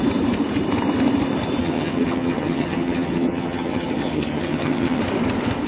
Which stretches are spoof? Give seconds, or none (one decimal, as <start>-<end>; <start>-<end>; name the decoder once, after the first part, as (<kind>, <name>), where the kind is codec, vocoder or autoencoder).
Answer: 1.6-5.0 (vocoder, HiFi-GAN)